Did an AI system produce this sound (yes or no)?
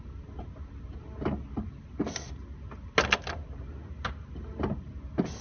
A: no